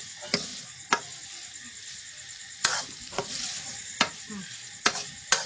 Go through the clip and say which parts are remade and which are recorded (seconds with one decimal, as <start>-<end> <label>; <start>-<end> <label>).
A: 0.0-3.3 recorded; 3.3-4.0 remade; 4.0-5.5 recorded